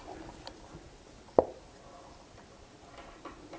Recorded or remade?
recorded